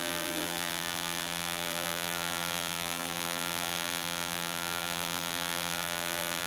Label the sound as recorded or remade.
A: remade